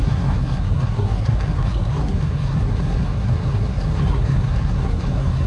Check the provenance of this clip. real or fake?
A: fake